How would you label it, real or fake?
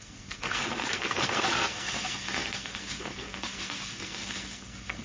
fake